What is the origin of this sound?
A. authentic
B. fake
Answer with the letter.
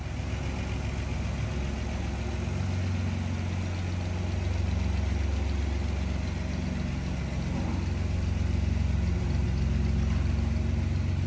A